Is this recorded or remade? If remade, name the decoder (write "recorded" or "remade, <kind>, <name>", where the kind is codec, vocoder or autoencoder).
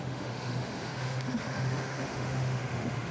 remade, autoencoder, DAC-VAE